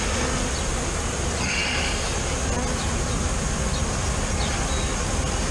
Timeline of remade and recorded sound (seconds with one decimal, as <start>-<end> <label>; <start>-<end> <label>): 0.0-5.5 recorded